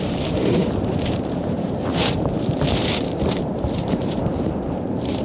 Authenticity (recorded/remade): remade